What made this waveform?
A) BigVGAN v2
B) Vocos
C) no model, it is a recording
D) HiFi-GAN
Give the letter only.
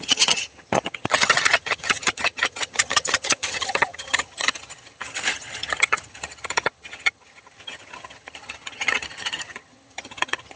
D